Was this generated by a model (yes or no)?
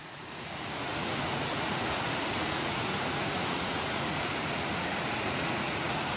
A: yes